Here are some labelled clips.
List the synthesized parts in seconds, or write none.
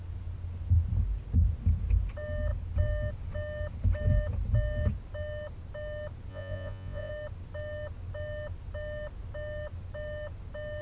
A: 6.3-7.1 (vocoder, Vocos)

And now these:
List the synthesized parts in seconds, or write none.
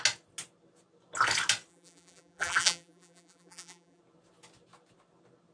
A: 1.7-4.0 (vocoder, BigVGAN v2)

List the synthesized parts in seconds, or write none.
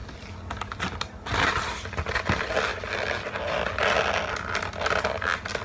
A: none